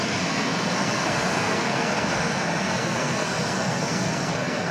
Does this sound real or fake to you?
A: fake